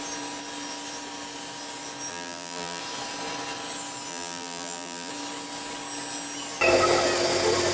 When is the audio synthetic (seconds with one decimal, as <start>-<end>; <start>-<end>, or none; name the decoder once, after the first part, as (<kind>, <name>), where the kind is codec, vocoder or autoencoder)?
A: 2.1-2.8 (vocoder, BigVGAN v2); 4.1-5.1